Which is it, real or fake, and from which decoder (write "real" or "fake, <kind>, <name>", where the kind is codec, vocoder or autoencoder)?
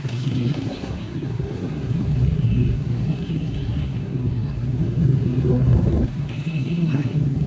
fake, codec, SNAC